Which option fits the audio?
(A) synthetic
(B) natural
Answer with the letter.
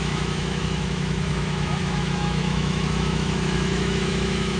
A